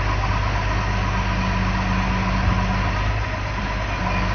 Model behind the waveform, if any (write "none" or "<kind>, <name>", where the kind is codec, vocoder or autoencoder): none